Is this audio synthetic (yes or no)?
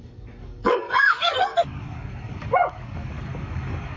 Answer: yes